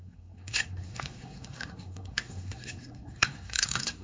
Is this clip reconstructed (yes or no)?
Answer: yes